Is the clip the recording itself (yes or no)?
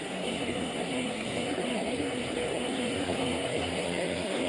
no